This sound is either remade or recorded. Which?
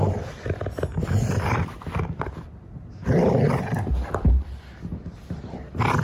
remade